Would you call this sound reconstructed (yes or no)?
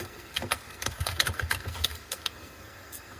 yes